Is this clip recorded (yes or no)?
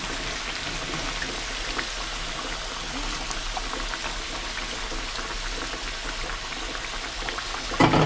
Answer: yes